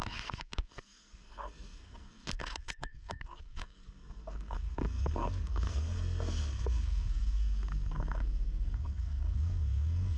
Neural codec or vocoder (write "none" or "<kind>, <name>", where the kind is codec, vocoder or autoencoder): codec, SNAC